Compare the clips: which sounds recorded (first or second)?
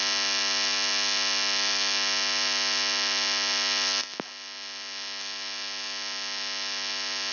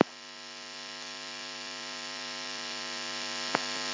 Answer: first